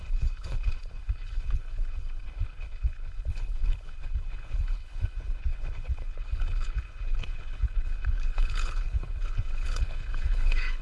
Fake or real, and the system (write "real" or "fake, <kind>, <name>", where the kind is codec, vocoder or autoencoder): fake, codec, HILCodec